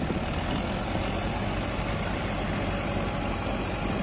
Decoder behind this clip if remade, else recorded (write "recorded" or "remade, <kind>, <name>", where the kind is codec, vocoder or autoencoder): recorded